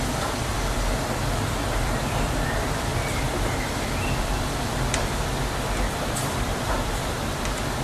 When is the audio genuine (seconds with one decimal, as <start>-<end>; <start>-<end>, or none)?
0.5-1.6